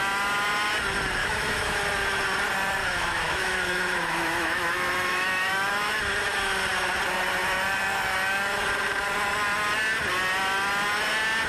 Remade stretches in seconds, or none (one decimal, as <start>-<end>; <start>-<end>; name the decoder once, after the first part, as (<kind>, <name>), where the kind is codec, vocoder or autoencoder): 1.2-1.8 (autoencoder, DAC-VAE); 2.8-6.0